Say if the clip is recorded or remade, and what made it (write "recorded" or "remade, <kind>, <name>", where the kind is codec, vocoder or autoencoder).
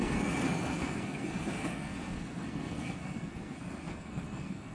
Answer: remade, codec, SNAC